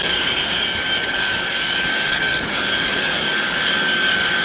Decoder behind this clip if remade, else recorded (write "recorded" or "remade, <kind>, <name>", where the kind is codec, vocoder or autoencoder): remade, codec, DAC